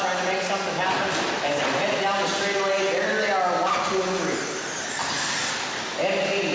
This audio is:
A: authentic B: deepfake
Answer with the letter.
A